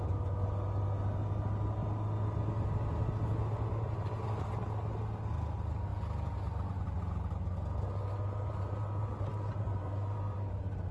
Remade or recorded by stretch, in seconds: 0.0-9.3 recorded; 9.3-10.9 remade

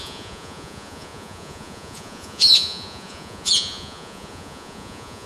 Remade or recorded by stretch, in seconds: 0.0-5.3 remade

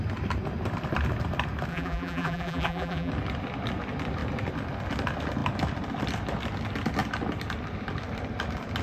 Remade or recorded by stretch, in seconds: 0.0-1.7 recorded; 1.7-3.1 remade; 3.1-8.8 recorded

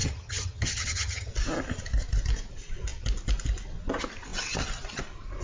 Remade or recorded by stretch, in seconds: 0.0-1.3 remade; 1.3-5.4 recorded

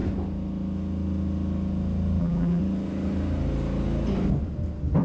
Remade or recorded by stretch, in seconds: 0.0-2.2 recorded; 2.2-2.6 remade; 2.6-5.0 recorded

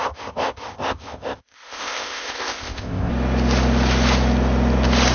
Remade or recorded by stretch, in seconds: 0.0-3.1 remade; 3.1-5.1 recorded

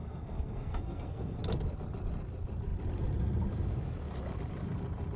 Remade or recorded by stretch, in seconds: 0.0-1.4 remade; 1.4-5.2 recorded